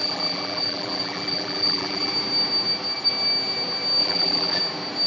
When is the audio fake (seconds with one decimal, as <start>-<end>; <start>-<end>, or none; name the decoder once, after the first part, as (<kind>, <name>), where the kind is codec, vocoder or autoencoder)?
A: 0.0-2.1 (vocoder, BigVGAN v2); 4.0-4.6